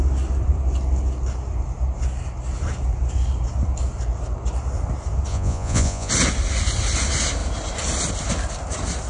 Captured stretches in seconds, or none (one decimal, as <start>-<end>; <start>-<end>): 0.0-5.3; 6.1-9.1